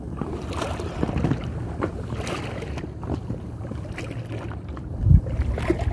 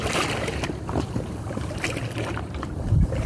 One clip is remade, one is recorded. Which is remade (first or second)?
second